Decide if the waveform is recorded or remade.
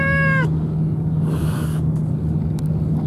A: remade